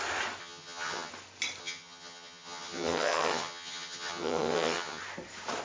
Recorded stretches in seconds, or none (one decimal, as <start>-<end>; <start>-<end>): 0.0-0.4; 1.1-1.6; 5.0-5.6